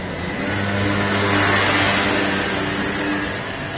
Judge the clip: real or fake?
real